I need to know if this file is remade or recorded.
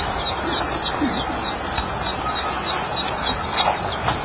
recorded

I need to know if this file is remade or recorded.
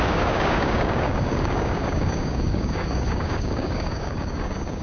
remade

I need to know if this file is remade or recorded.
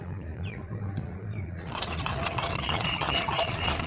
remade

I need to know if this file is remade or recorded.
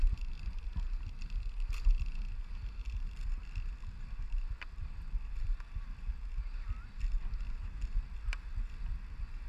recorded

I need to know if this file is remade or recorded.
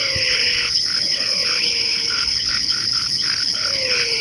remade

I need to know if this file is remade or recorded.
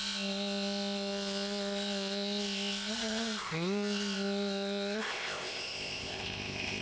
remade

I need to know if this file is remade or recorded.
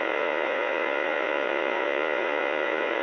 remade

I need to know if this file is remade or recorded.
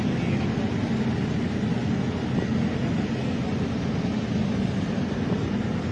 recorded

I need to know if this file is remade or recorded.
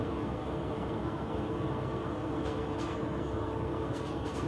remade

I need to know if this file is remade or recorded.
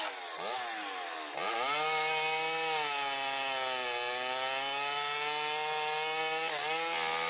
recorded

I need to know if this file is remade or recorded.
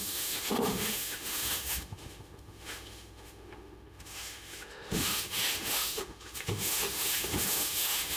remade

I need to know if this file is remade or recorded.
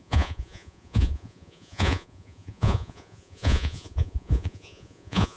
remade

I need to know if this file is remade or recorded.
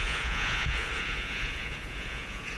remade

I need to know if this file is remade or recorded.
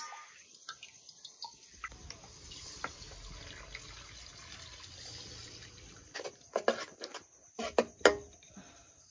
recorded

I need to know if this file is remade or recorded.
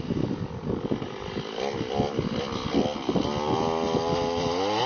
recorded